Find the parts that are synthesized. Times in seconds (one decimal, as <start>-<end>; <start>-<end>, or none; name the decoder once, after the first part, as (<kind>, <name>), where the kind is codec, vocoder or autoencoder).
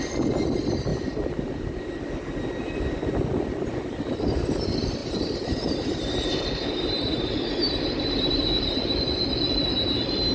0.9-1.8 (vocoder, BigVGAN v2); 5.0-8.6